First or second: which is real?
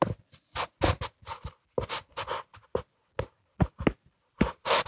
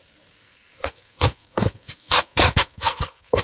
first